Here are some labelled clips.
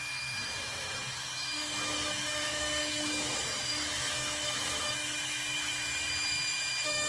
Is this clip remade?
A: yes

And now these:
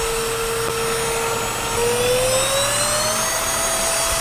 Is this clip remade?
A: no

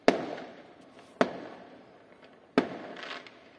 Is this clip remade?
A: no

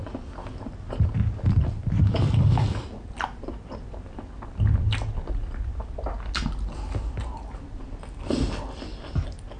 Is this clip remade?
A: no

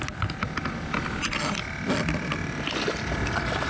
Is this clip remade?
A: no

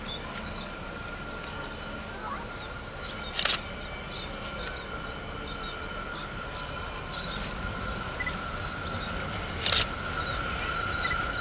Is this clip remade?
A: no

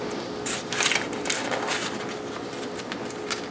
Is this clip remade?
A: no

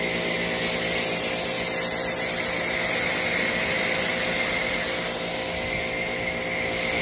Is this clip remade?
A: no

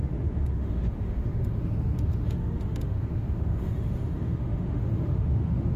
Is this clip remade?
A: yes